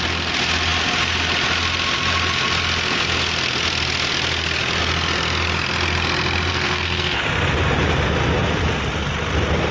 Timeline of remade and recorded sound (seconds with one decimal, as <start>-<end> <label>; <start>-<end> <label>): 0.0-6.5 recorded; 6.5-7.2 remade; 7.2-9.7 recorded